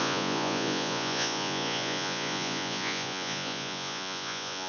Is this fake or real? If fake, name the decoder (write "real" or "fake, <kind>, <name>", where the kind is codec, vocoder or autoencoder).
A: fake, vocoder, Vocos